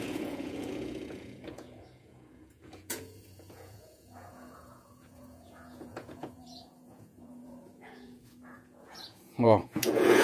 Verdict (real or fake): fake